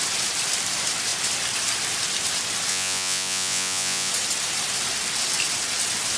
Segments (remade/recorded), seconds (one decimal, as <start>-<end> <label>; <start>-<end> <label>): 0.0-2.7 recorded; 2.7-4.1 remade; 4.1-6.2 recorded